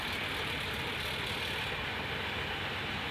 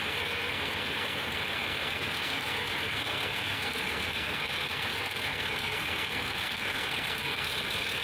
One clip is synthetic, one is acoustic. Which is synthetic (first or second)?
second